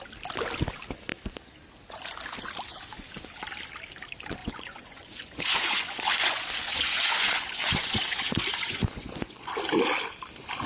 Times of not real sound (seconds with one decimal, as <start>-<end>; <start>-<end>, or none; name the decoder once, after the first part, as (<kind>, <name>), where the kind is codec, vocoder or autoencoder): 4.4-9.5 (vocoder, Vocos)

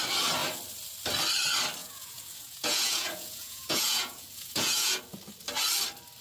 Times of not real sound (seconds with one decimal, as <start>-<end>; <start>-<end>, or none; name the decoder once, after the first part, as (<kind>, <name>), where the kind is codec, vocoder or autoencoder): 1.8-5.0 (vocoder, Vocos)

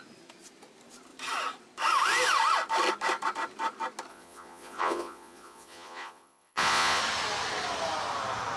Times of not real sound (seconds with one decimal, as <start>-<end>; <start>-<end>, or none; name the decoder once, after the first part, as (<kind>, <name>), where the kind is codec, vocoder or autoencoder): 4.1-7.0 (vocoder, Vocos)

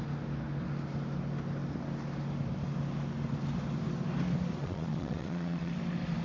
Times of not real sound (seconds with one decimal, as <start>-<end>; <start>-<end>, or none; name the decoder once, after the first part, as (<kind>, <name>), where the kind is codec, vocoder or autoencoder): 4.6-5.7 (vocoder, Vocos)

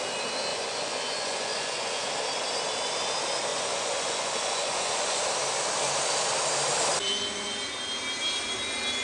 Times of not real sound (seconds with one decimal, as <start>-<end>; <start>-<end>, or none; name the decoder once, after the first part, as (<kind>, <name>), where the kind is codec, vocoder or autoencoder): 0.5-2.1 (vocoder, Vocos); 3.5-5.2